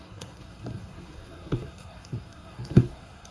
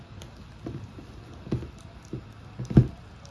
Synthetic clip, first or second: first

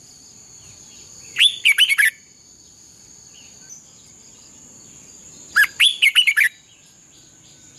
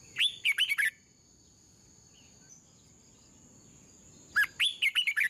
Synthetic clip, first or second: first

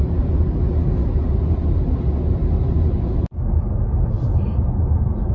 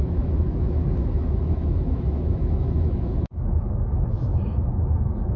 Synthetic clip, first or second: second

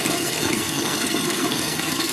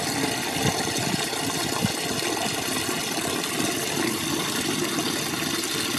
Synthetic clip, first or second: first